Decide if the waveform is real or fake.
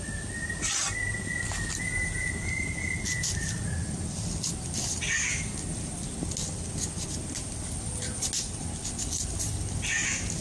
real